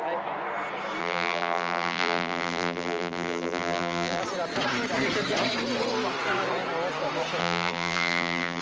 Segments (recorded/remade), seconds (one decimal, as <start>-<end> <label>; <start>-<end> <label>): 0.0-1.0 recorded; 1.0-4.2 remade; 4.2-7.4 recorded; 7.4-8.6 remade